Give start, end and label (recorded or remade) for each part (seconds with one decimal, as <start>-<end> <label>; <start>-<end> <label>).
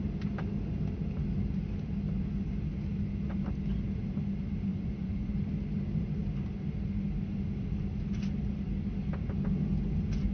0.0-4.7 recorded; 4.7-5.4 remade; 5.4-10.3 recorded